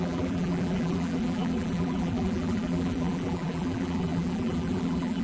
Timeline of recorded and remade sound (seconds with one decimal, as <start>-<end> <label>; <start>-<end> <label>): 0.0-5.2 remade